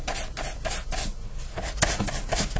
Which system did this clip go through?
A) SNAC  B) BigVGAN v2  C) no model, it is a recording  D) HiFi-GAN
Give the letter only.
C